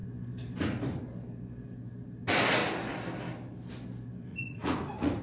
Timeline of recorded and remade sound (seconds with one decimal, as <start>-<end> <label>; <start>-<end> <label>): 0.0-4.3 recorded; 4.3-5.2 remade